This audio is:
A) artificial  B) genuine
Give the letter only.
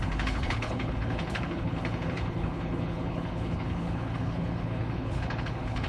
A